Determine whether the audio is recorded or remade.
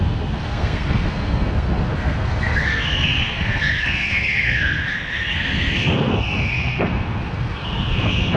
remade